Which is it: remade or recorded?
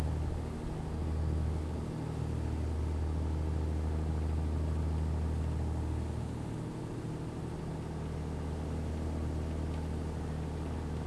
recorded